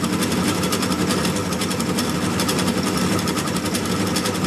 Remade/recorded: recorded